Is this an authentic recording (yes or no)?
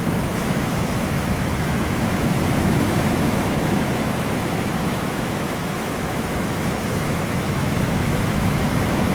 no